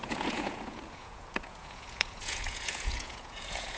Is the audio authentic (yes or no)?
no